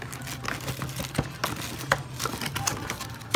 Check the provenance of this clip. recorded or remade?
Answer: recorded